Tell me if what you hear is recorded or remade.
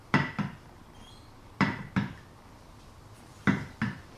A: remade